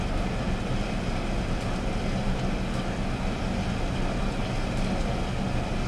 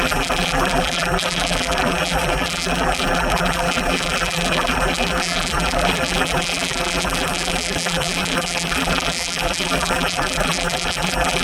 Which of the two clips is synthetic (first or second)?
second